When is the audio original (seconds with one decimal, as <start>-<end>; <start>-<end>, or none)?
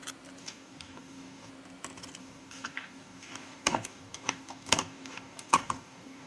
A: 0.0-0.4; 1.5-2.2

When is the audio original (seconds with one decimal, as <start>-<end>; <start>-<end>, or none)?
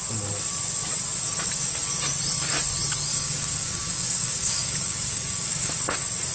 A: 0.0-3.1; 5.7-6.3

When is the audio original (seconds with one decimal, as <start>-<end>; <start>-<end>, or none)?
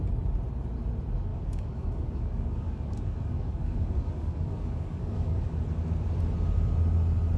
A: 0.0-1.3; 5.6-7.4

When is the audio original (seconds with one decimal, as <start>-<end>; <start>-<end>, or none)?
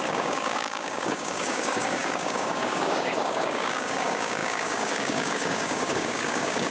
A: none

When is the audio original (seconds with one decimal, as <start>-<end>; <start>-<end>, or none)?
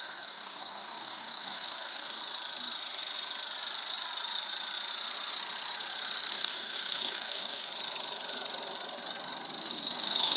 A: 2.2-6.3; 7.7-9.6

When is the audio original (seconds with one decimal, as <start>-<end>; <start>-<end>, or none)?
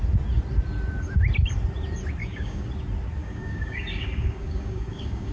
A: 0.0-2.2; 2.7-3.2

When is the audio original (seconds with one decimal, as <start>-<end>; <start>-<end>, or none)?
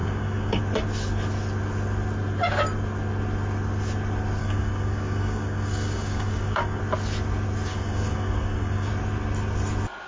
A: 0.6-4.4; 6.8-7.7; 8.9-10.1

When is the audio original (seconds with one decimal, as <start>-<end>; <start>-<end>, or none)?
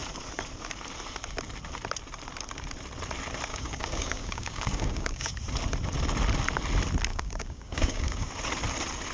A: 0.0-3.5; 5.3-7.1; 8.3-9.1